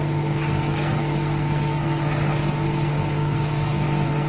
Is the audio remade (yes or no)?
yes